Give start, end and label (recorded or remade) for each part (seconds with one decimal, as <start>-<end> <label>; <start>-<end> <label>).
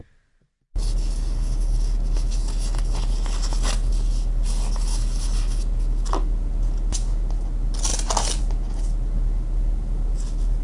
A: 0.0-10.6 recorded